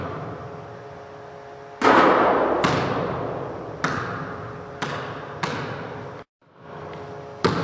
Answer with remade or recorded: recorded